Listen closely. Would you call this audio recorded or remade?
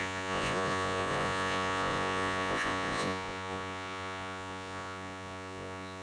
remade